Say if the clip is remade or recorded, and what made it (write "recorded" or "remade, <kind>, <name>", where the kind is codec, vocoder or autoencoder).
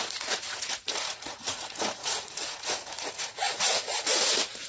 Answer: remade, vocoder, Vocos